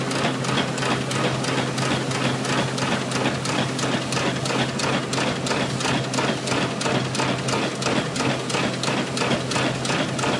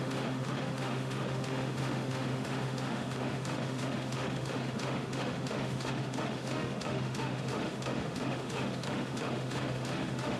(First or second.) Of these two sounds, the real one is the first